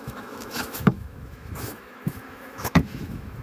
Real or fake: fake